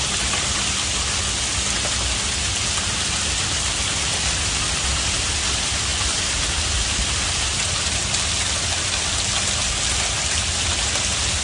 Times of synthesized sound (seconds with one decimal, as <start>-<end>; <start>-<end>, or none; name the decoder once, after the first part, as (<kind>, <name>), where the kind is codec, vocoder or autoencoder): none